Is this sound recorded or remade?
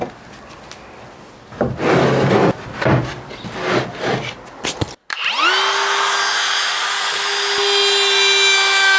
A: recorded